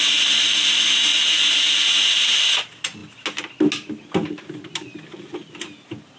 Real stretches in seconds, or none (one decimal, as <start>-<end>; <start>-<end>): 0.0-6.2